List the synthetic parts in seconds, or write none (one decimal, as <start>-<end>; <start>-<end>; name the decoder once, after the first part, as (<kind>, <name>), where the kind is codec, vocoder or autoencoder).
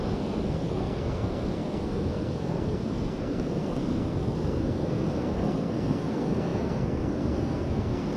0.0-8.2 (codec, SNAC)